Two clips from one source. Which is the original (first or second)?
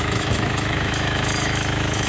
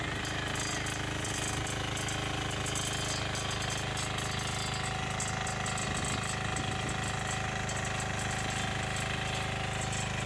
second